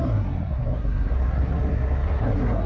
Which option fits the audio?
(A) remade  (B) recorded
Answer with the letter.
A